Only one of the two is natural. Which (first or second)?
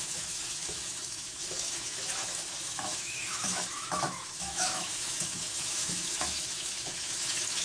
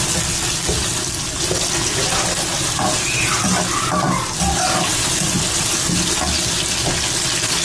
second